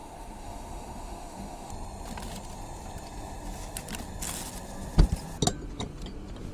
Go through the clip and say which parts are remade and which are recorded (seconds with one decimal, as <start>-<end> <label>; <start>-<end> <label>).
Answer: 0.0-1.7 remade; 1.7-6.5 recorded